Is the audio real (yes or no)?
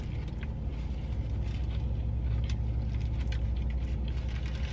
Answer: yes